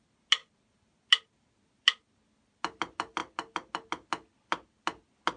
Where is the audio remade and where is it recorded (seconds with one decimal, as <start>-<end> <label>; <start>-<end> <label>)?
0.0-5.4 recorded